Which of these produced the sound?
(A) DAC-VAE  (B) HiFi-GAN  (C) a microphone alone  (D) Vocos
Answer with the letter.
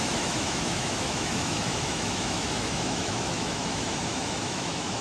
A